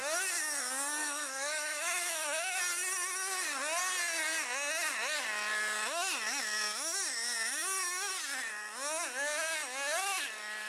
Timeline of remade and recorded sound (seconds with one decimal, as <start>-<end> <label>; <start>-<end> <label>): 0.0-1.0 recorded; 1.0-2.6 remade; 2.6-10.7 recorded